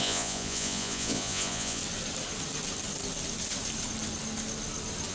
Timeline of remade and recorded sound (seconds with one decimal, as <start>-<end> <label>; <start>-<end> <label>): 0.0-1.8 remade; 1.8-5.1 recorded